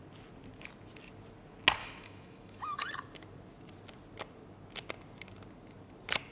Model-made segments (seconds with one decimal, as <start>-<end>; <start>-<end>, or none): 1.8-2.9